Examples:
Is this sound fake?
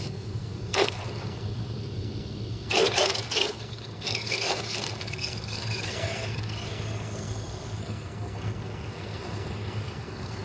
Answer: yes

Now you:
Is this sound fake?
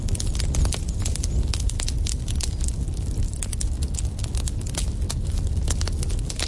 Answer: no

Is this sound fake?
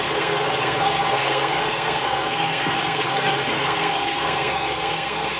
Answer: yes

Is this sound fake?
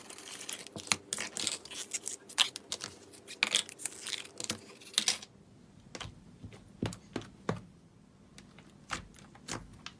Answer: no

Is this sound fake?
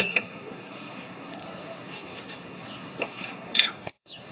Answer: yes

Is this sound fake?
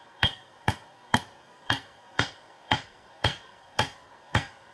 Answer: yes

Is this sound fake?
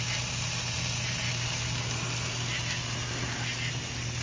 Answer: no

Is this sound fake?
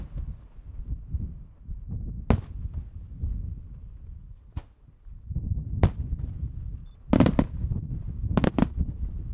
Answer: no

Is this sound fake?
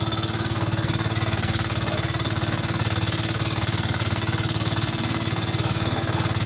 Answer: yes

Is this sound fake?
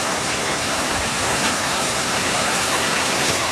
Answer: yes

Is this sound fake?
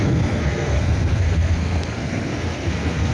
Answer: yes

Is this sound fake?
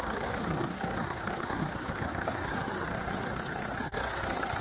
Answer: yes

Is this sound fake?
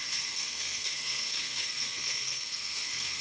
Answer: yes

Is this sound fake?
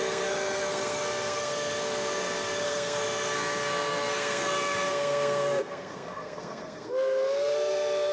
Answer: yes